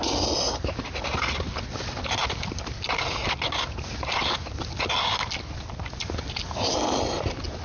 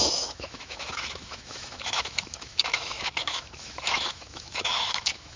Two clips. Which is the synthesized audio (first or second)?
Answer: second